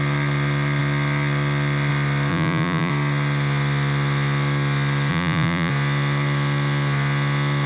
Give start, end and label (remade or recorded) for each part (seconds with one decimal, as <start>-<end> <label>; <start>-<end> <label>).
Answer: 0.0-2.3 recorded; 2.3-2.9 remade; 2.9-5.1 recorded; 5.1-5.7 remade; 5.7-7.7 recorded